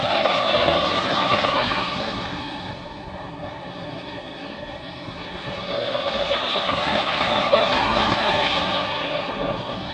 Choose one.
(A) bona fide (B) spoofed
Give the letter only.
B